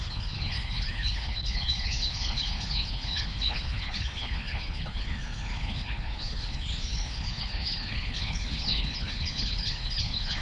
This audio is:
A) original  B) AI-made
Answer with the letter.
B